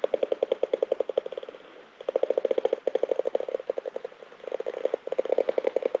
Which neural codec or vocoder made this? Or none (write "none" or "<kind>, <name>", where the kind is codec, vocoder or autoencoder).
none